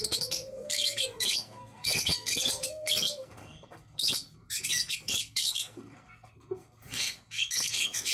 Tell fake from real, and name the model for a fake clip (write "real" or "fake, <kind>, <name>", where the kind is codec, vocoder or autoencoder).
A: fake, codec, SNAC